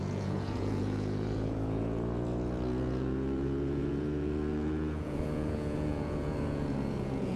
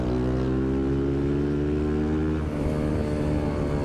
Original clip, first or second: second